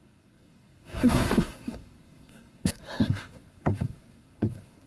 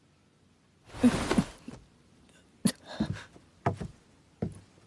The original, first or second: second